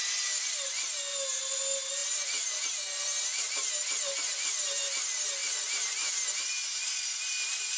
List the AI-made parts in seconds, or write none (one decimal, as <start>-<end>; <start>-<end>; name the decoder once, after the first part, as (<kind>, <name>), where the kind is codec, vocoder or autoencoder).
none